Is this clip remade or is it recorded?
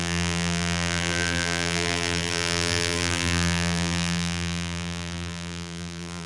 remade